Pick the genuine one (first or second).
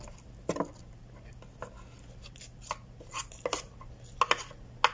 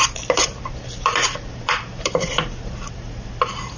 first